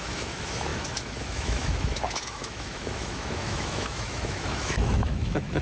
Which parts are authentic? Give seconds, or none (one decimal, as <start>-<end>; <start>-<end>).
none